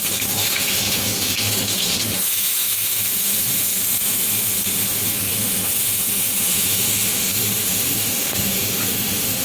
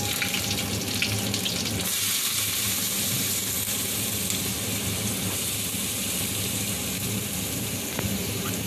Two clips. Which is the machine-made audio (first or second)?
first